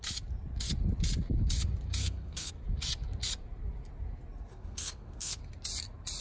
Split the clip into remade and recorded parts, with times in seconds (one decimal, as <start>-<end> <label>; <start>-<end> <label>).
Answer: 0.0-2.0 recorded; 2.0-2.5 remade; 2.5-4.5 recorded; 4.5-5.4 remade; 5.4-6.2 recorded